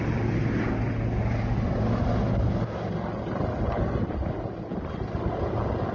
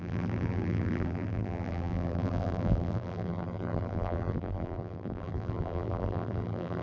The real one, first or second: first